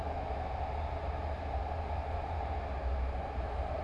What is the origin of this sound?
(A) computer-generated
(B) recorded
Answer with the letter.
B